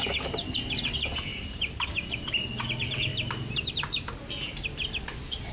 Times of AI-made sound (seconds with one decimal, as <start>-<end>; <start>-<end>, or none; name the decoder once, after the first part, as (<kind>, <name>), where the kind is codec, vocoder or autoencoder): 1.3-2.3 (vocoder, BigVGAN v2); 3.1-3.7